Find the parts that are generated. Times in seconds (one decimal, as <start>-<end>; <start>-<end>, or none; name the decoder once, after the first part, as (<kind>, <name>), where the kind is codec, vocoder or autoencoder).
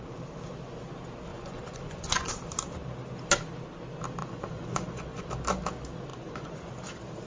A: 1.3-2.3 (vocoder, Vocos); 4.2-5.3; 6.1-6.7